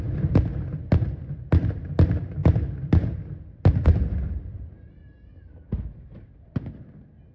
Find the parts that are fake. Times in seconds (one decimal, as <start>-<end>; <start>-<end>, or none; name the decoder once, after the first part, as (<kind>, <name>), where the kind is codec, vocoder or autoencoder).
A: none